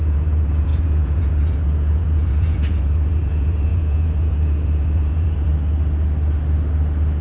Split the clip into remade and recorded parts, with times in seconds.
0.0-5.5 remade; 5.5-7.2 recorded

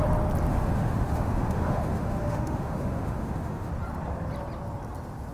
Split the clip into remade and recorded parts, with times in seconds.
0.0-0.5 recorded; 0.5-3.7 remade; 3.7-5.3 recorded

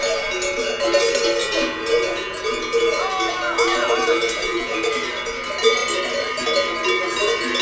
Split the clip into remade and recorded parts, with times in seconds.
0.0-1.4 recorded; 1.4-4.9 remade; 4.9-7.6 recorded

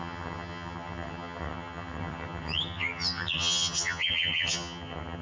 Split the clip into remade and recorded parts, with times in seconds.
0.0-5.2 remade